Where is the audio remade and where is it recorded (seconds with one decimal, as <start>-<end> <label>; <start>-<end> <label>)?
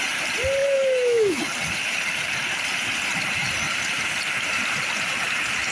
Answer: 0.0-0.6 recorded; 0.6-1.4 remade; 1.4-5.7 recorded